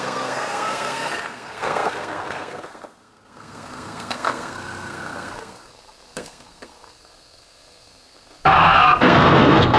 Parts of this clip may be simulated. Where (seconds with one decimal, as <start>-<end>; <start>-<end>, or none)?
0.0-9.8